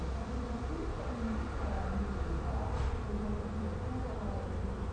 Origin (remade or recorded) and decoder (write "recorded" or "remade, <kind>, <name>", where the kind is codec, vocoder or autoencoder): recorded